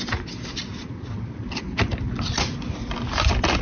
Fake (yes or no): no